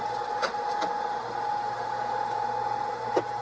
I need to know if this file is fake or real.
real